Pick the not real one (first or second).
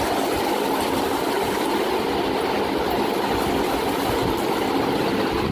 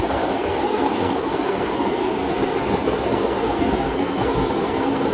second